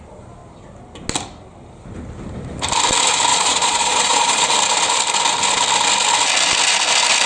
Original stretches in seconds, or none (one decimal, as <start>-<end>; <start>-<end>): 0.0-3.3; 4.5-7.3